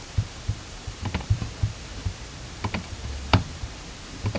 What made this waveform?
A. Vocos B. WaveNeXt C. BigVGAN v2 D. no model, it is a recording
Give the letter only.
C